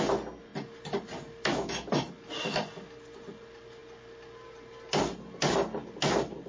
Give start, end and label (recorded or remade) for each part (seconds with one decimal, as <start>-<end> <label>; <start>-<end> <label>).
0.0-6.5 recorded